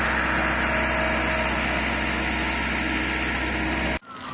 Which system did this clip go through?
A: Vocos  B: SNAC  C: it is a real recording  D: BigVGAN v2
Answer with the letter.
C